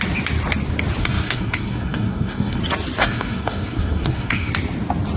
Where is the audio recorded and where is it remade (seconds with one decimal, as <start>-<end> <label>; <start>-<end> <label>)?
0.0-1.0 recorded; 1.0-2.6 remade; 2.6-3.0 recorded; 3.0-4.5 remade; 4.5-5.2 recorded